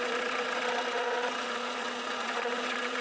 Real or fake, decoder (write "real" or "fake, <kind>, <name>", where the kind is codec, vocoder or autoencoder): fake, vocoder, Vocos